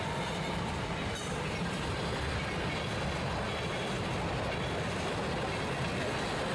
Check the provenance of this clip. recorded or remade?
recorded